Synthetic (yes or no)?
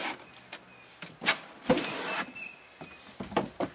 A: no